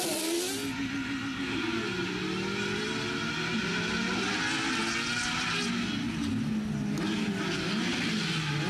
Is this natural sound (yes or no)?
yes